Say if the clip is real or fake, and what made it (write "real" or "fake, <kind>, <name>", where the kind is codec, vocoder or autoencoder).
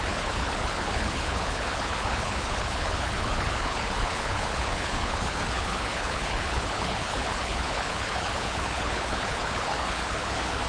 fake, codec, HILCodec